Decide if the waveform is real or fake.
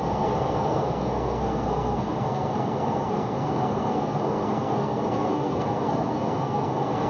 fake